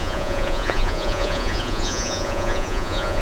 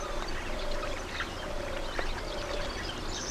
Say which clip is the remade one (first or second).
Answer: first